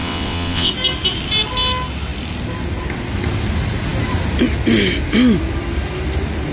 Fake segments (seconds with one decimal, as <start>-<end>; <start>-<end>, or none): 0.0-0.7